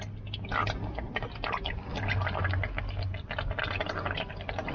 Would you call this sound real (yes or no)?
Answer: yes